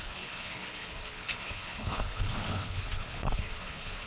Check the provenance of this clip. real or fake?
fake